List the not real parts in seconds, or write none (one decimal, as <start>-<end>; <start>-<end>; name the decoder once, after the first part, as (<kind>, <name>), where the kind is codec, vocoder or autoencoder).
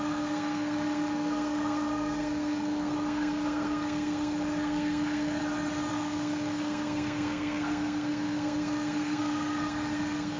0.0-5.4 (codec, SNAC); 5.9-10.4